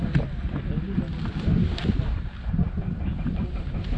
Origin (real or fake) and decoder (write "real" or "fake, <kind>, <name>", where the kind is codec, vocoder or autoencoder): real